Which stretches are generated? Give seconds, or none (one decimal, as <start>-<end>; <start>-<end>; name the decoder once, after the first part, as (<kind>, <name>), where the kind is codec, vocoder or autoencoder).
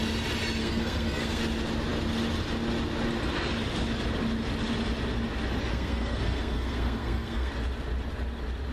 0.6-1.4 (codec, SNAC); 5.7-7.5